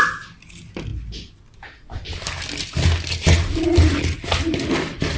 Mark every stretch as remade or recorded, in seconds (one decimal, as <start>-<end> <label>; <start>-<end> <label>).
0.0-5.2 recorded